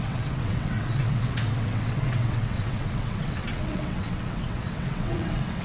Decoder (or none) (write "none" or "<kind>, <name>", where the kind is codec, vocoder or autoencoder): vocoder, WaveNeXt